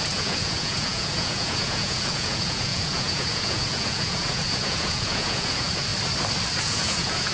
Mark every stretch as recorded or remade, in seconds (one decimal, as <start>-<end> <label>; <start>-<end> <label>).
0.0-5.9 remade; 5.9-6.6 recorded; 6.6-7.3 remade